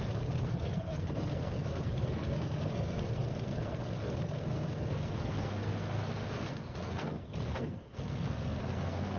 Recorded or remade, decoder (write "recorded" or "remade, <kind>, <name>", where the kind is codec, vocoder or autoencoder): remade, codec, SNAC